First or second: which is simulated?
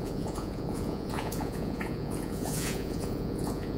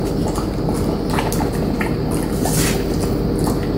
first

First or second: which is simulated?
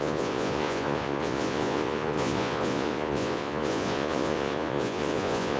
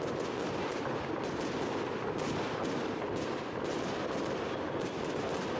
first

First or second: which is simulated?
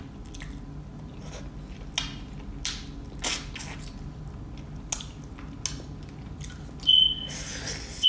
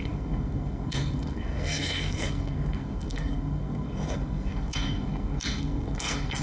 second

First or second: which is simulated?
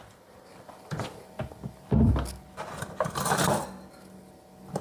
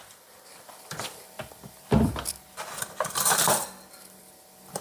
second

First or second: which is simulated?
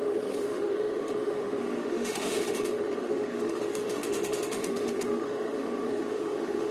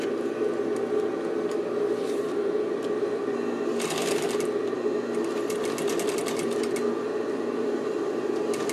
first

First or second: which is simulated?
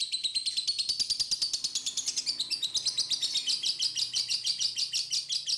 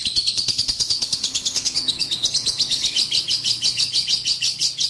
second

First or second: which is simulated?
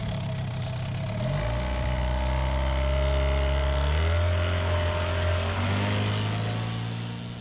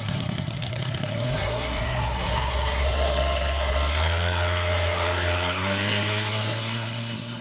second